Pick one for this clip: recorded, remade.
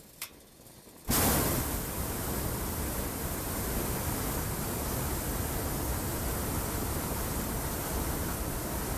recorded